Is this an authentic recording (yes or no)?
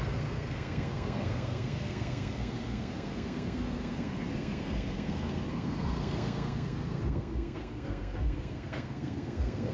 no